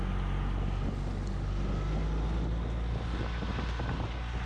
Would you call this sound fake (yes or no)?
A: no